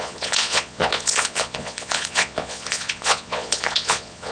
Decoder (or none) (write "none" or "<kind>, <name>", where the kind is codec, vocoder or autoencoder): vocoder, Vocos